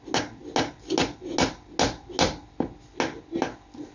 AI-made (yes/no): no